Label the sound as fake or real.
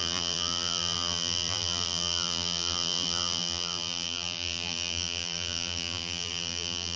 fake